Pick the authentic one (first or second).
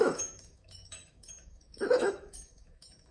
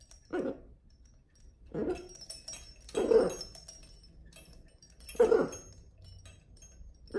second